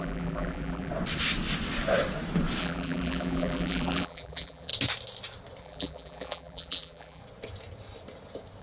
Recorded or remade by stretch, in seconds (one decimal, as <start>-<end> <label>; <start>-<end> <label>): 0.0-0.9 remade; 0.9-2.6 recorded; 2.6-4.7 remade; 4.7-5.6 recorded; 5.6-7.2 remade; 7.2-8.6 recorded